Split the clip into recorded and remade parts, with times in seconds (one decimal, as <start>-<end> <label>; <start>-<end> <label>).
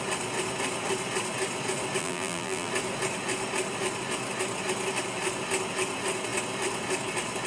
0.0-2.0 recorded; 2.0-2.7 remade; 2.7-7.5 recorded